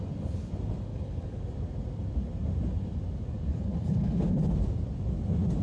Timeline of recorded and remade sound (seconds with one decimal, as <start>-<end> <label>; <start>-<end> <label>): 0.0-0.9 recorded; 0.9-1.4 remade; 1.4-3.5 recorded; 3.5-4.5 remade; 4.5-5.6 recorded